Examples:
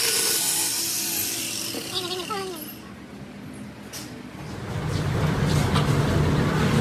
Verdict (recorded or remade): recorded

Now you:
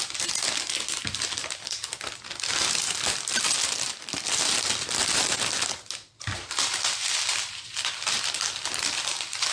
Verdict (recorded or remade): recorded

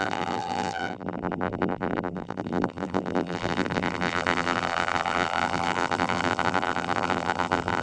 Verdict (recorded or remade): remade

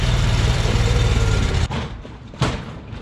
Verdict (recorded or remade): remade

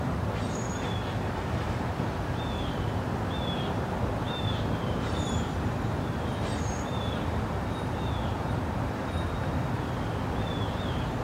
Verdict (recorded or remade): remade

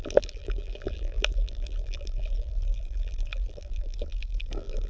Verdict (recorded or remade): remade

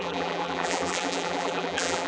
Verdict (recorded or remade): remade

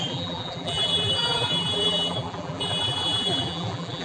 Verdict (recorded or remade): remade